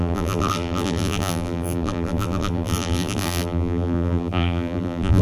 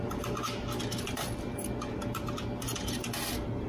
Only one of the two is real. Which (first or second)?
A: second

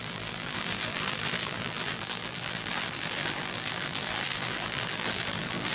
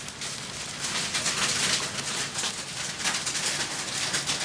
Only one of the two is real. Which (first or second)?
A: second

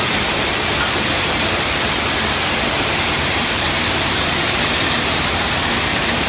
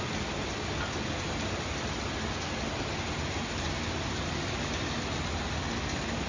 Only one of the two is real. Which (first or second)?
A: second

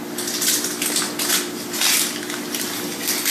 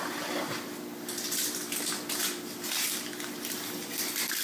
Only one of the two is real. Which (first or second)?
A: first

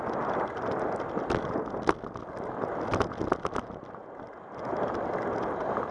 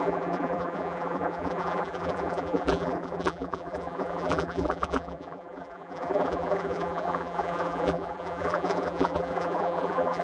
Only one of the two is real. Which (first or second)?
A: first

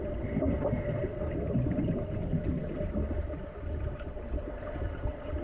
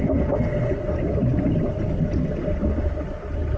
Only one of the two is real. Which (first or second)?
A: second